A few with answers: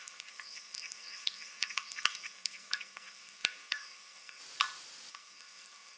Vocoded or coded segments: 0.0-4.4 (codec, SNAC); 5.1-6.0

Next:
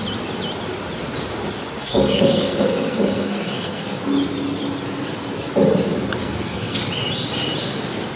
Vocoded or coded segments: 1.8-4.0 (codec, SNAC); 6.2-6.8

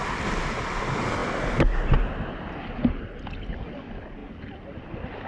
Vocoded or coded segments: none

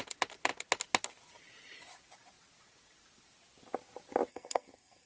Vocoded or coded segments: 4.3-5.1 (codec, SNAC)